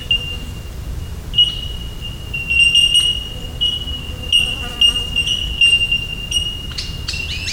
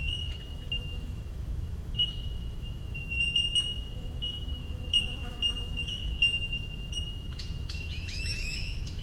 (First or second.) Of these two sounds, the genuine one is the first